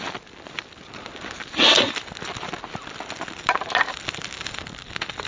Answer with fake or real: real